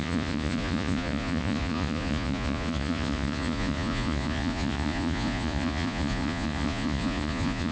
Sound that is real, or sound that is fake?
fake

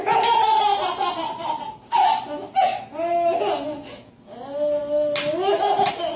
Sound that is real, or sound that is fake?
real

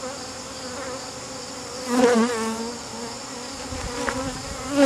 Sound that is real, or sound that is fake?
real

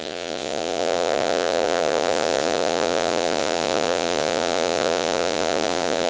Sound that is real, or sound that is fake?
fake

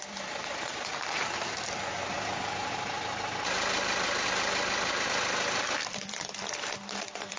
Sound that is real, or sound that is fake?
fake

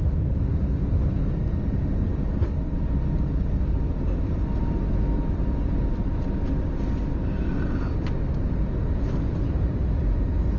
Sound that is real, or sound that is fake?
fake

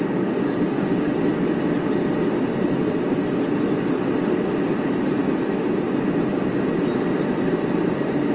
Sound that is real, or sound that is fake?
real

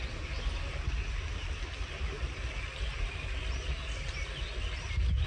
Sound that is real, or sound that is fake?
real